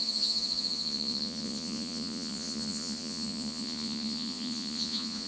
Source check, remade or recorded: remade